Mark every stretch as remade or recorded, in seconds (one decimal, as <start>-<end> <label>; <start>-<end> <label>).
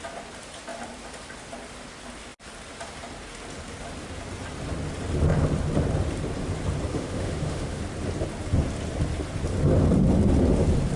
0.0-6.9 recorded; 6.9-7.8 remade; 7.8-11.0 recorded